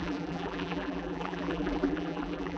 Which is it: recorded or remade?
remade